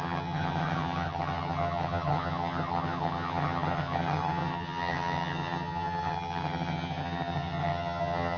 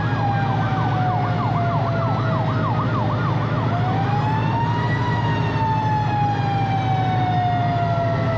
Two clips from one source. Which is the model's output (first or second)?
first